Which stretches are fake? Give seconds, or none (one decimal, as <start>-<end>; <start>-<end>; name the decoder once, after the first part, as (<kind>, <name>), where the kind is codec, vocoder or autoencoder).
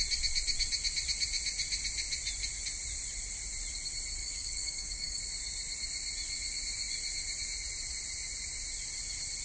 4.2-5.2 (codec, DAC)